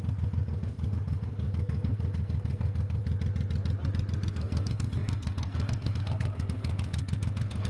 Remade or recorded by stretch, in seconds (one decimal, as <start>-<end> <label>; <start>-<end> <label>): 0.0-3.0 remade; 3.0-4.3 recorded; 4.3-7.7 remade